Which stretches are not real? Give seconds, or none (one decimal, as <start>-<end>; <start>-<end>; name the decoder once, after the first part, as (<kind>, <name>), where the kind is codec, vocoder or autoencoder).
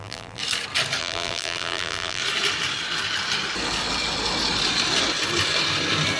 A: 0.0-0.4 (vocoder, BigVGAN v2); 1.0-2.2